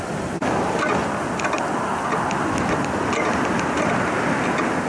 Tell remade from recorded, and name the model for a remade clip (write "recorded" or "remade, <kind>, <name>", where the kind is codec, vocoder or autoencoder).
recorded